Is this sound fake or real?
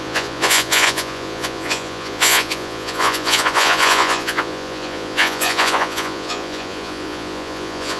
fake